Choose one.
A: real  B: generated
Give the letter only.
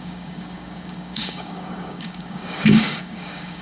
B